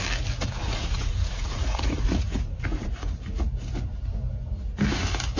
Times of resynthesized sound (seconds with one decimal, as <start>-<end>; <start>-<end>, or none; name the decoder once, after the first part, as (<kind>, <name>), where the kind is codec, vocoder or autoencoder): 0.6-3.2 (vocoder, Vocos)